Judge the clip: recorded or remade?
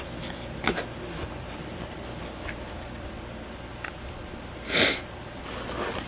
recorded